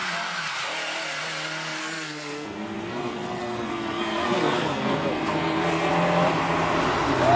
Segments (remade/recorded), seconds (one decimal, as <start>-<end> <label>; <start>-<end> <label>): 0.0-1.8 recorded; 1.8-5.9 remade; 5.9-7.4 recorded